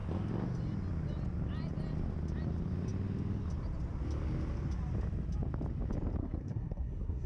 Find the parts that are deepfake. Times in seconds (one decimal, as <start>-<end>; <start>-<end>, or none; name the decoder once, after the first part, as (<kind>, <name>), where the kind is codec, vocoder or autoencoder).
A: 6.2-7.3 (codec, SNAC)

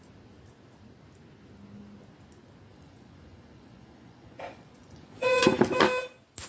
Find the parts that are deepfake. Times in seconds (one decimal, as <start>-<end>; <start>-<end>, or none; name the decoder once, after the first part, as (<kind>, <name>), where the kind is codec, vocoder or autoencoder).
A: 2.7-5.6 (vocoder, Vocos)

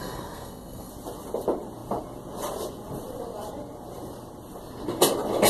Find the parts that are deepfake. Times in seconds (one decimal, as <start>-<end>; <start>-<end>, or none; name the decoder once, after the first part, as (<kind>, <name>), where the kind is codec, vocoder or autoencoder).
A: 0.0-0.9 (codec, SNAC)

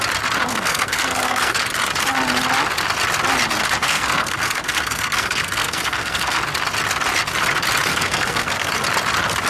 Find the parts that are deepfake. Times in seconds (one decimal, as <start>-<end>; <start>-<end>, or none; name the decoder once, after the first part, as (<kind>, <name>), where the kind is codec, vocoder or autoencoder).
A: 0.5-1.6 (codec, SNAC); 3.8-6.4; 7.9-8.7

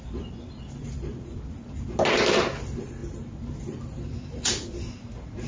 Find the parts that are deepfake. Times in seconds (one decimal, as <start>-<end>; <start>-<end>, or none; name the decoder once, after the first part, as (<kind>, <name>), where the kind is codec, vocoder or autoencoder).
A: none

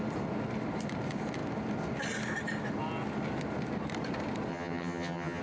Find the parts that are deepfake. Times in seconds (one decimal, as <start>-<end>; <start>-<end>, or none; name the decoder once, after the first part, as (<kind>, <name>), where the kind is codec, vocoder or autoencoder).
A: 4.5-5.4 (vocoder, HiFi-GAN)

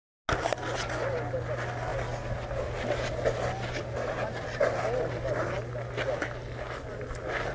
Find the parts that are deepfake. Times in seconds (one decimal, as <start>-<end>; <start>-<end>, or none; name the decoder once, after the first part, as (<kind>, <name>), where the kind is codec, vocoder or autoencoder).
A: none

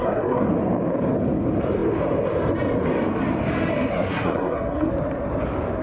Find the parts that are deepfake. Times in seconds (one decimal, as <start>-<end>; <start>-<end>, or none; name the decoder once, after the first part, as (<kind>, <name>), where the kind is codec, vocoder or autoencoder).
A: 0.0-0.5 (codec, SNAC); 3.9-4.9